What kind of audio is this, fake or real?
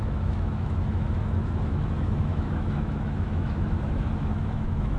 fake